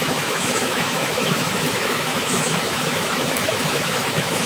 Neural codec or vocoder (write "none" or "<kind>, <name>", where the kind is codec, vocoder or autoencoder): autoencoder, DAC-VAE